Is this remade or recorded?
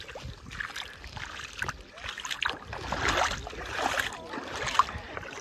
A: recorded